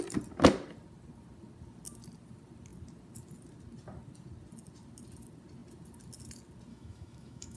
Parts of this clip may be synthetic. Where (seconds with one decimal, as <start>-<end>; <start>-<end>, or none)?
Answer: 6.7-7.6